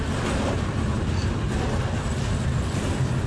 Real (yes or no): yes